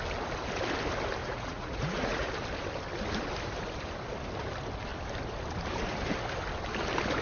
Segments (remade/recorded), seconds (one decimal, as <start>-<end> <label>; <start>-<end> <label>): 0.0-1.2 recorded; 1.2-2.3 remade; 2.3-7.2 recorded